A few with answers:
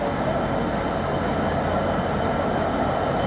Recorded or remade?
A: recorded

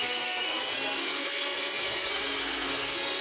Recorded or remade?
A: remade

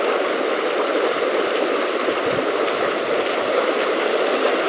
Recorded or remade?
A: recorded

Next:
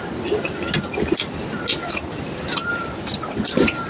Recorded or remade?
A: recorded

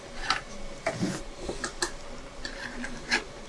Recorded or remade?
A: recorded